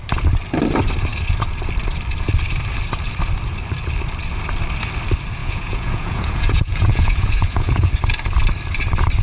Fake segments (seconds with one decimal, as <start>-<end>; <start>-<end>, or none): 5.4-7.9